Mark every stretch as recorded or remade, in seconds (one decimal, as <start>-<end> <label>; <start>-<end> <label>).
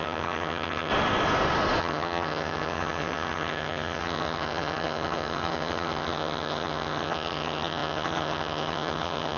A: 0.0-0.9 remade; 0.9-1.8 recorded; 1.8-9.4 remade